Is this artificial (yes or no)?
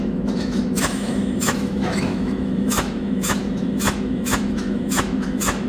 yes